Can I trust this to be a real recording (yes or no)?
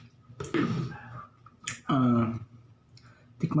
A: yes